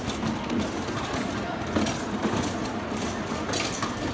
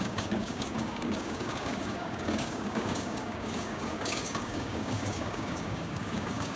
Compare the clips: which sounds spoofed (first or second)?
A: second